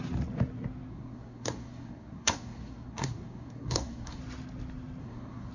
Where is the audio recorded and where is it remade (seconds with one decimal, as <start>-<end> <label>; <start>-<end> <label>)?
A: 0.0-0.9 recorded; 0.9-4.2 remade; 4.2-5.0 recorded; 5.0-5.5 remade